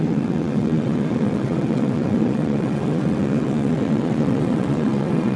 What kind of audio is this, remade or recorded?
remade